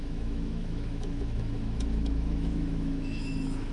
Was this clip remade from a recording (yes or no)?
yes